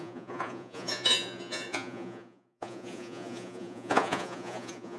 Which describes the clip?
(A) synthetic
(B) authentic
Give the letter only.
A